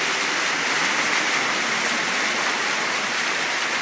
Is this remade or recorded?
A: recorded